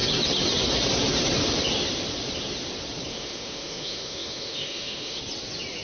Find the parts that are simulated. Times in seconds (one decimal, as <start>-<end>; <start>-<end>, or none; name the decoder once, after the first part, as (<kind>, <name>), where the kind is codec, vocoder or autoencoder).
3.1-5.2 (autoencoder, DAC-VAE)